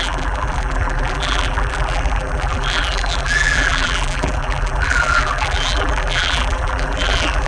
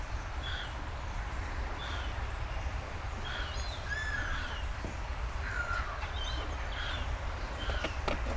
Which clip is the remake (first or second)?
first